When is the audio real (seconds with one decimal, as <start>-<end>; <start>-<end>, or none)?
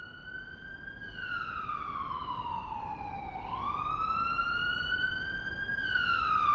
0.0-6.5